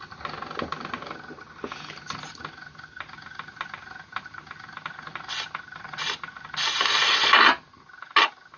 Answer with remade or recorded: recorded